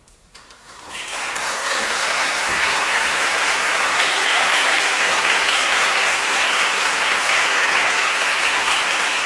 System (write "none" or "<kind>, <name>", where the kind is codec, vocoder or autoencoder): codec, SNAC